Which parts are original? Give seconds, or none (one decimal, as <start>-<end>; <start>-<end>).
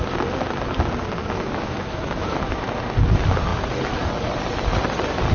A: 0.0-1.2; 2.8-5.3